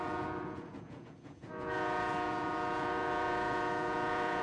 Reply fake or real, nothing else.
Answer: fake